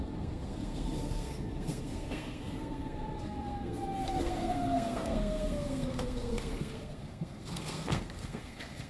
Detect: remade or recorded remade